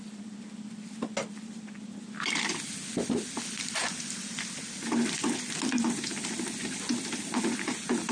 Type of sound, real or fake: real